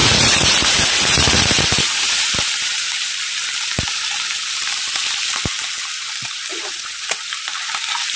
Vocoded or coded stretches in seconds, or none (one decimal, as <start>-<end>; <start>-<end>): 0.0-2.2; 6.5-7.1